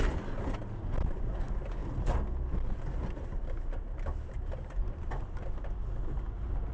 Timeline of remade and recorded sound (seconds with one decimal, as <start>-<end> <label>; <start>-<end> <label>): 0.0-1.8 recorded; 1.8-3.1 remade; 3.1-6.7 recorded